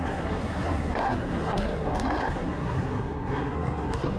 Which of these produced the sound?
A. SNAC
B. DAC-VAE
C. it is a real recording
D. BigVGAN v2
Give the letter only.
A